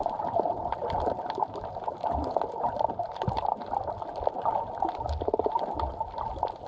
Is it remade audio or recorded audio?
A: recorded